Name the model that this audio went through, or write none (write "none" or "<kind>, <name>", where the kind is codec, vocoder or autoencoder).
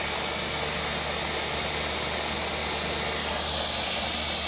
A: none